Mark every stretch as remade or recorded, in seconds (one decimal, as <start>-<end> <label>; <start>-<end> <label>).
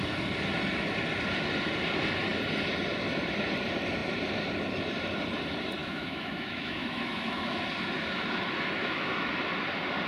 0.0-5.8 recorded; 5.8-7.5 remade; 7.5-8.8 recorded; 8.8-9.3 remade; 9.3-10.1 recorded